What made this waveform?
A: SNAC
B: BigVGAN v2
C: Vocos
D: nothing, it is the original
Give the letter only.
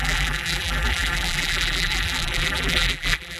B